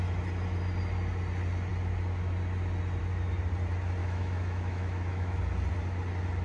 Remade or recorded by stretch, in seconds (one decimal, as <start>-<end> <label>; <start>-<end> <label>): 0.0-4.0 recorded; 4.0-5.4 remade; 5.4-6.4 recorded